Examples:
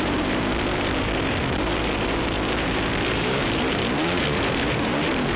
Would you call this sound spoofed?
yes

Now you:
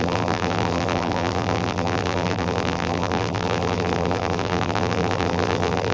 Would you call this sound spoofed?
yes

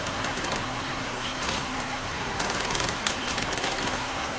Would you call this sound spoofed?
yes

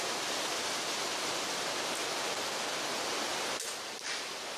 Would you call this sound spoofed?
no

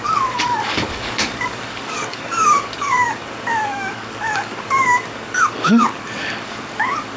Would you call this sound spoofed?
yes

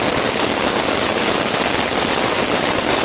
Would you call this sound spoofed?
no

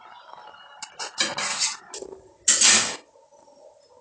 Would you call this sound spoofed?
no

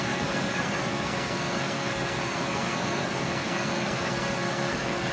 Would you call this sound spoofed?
yes